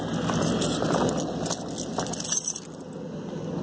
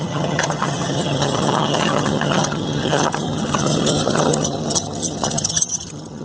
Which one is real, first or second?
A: first